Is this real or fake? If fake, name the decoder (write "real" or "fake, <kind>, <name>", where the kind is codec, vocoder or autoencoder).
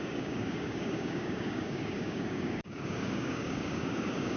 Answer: fake, codec, DAC